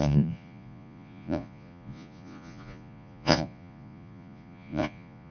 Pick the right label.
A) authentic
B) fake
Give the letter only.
B